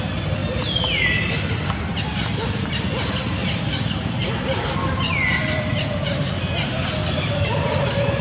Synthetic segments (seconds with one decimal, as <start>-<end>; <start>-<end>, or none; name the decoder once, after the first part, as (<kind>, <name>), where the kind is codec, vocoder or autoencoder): 7.0-7.6 (codec, DAC)